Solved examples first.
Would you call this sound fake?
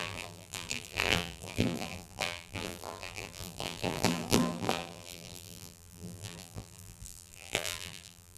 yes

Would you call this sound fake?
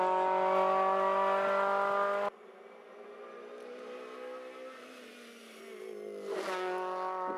no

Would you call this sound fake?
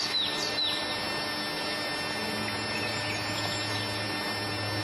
no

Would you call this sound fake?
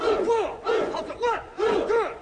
yes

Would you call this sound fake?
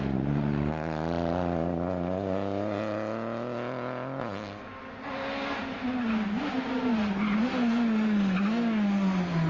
no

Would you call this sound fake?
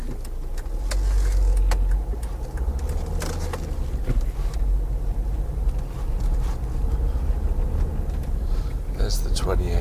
no